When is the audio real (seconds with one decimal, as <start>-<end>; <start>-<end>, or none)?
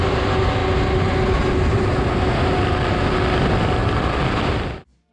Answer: 0.0-3.8